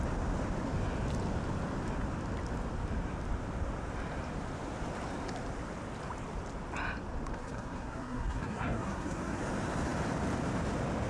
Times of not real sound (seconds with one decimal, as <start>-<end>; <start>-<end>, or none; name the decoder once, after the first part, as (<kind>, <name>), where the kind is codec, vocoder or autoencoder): 7.3-9.4 (codec, SNAC)